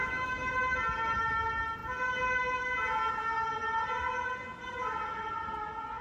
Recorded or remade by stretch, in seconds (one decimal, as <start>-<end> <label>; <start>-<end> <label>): 0.0-0.5 remade; 0.5-6.0 recorded